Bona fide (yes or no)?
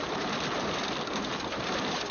yes